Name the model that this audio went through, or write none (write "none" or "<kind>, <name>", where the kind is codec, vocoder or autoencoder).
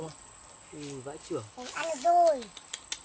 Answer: none